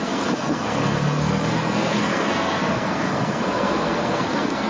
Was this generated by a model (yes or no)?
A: yes